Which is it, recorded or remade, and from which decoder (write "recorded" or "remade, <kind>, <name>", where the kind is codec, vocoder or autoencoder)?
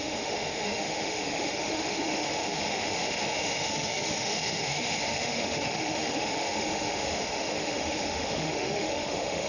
remade, autoencoder, DAC-VAE